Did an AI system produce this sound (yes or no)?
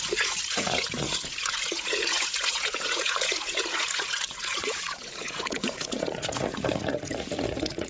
yes